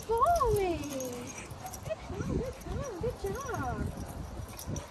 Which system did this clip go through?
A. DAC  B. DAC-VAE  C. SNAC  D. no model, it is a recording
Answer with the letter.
D